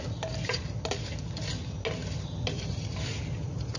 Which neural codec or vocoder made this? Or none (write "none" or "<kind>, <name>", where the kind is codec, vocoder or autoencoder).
none